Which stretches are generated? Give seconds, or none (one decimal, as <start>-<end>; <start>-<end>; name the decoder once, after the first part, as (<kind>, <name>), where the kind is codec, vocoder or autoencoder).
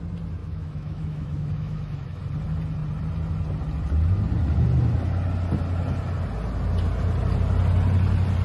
0.4-2.2 (autoencoder, DAC-VAE)